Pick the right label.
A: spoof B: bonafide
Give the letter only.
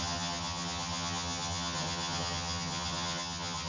A